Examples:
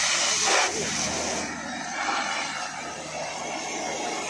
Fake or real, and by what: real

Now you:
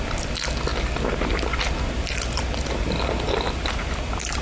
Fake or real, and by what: real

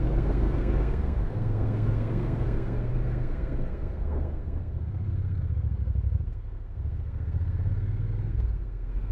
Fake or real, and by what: fake, codec, SNAC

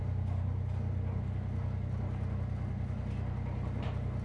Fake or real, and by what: real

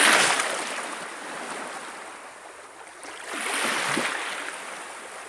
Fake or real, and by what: real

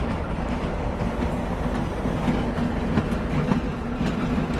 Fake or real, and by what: real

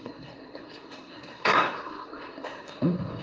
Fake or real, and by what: fake, codec, SNAC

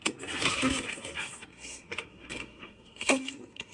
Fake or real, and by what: fake, codec, SNAC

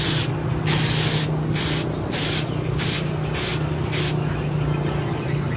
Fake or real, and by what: real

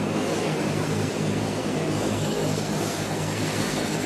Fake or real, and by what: fake, codec, SNAC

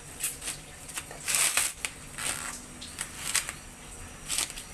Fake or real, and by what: real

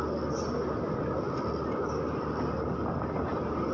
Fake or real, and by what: real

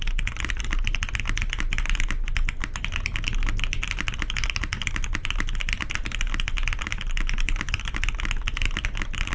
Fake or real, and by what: real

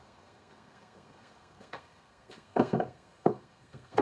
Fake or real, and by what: fake, codec, SNAC